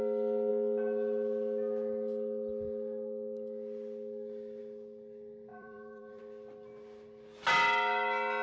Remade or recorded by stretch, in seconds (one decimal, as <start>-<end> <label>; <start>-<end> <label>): 0.0-5.5 recorded; 5.5-6.2 remade; 6.2-8.4 recorded